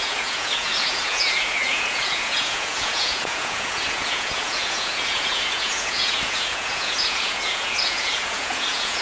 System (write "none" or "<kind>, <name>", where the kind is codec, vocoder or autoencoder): vocoder, Vocos